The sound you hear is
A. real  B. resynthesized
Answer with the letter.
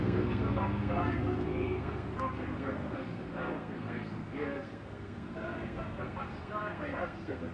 B